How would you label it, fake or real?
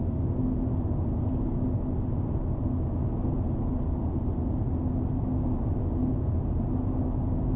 real